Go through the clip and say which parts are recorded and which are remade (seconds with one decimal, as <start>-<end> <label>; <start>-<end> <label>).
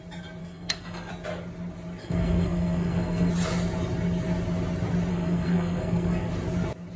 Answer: 0.0-0.4 recorded; 0.4-1.1 remade; 1.1-2.0 recorded; 2.0-3.3 remade; 3.3-5.1 recorded; 5.1-6.3 remade; 6.3-7.0 recorded